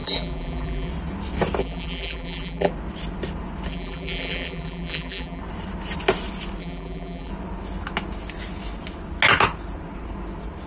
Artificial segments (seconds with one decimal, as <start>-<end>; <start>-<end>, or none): 0.0-0.9; 1.6-2.7; 3.7-5.4; 6.6-7.3